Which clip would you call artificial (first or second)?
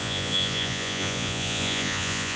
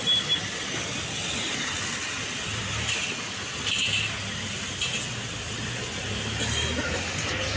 first